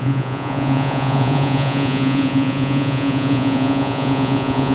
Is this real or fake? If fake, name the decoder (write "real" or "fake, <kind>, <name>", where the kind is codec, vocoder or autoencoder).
fake, vocoder, Vocos